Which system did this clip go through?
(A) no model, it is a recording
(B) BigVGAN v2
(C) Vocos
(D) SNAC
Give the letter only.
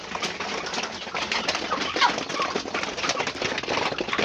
A